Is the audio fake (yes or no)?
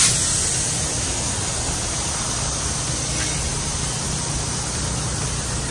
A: no